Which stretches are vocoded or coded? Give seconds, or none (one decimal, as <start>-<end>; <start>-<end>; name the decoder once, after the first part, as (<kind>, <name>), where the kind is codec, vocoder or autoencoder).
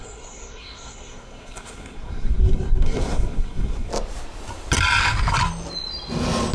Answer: 0.0-3.9 (codec, SNAC)